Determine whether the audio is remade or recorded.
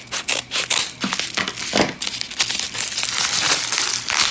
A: recorded